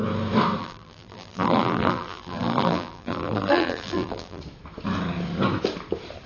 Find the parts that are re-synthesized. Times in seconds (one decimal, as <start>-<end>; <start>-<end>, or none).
0.6-4.4